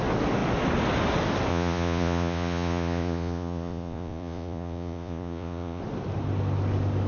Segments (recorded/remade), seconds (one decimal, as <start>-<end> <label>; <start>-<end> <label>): 0.0-1.5 recorded; 1.5-5.8 remade; 5.8-7.1 recorded